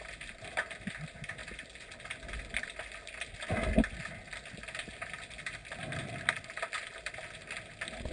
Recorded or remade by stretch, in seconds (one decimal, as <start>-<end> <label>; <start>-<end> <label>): 0.0-8.1 recorded